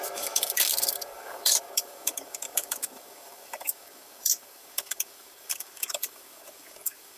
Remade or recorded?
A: remade